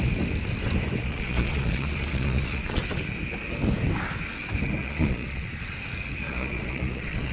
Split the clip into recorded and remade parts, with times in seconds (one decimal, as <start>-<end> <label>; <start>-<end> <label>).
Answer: 0.0-1.0 recorded; 1.0-2.8 remade; 2.8-4.8 recorded; 4.8-5.6 remade; 5.6-6.2 recorded; 6.2-7.3 remade